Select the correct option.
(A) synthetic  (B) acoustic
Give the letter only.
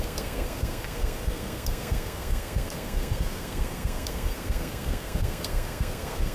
A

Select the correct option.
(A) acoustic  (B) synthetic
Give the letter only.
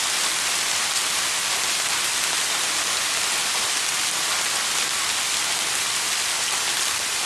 A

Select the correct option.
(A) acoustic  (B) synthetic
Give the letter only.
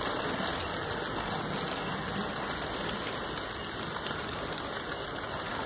A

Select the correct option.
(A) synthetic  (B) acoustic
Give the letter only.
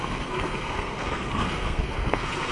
A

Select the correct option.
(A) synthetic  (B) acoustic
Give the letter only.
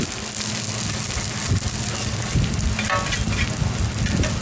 B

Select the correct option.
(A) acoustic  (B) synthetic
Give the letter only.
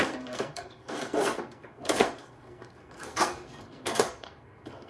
B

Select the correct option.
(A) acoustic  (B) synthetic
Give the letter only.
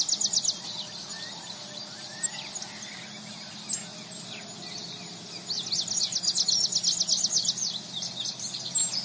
A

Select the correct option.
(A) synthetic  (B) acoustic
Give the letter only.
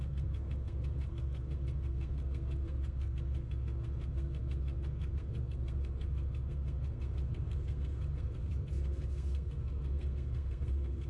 A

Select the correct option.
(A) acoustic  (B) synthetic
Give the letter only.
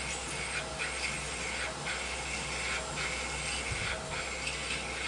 A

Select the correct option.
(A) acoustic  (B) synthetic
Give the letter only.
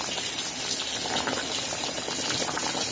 A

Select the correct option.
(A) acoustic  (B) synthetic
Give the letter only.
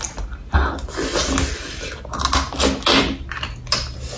A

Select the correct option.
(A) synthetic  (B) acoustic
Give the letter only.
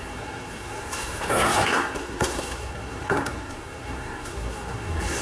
A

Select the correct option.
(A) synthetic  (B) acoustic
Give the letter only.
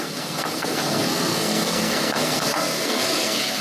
A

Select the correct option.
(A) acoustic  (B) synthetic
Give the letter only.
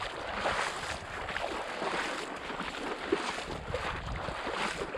A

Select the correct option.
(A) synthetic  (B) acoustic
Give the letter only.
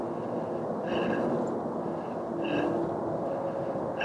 B